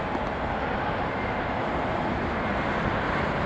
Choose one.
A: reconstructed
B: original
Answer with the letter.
B